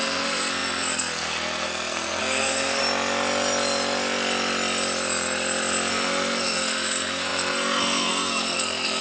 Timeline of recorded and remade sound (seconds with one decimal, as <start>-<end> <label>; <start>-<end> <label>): 0.0-2.8 remade; 2.8-5.9 recorded; 5.9-9.0 remade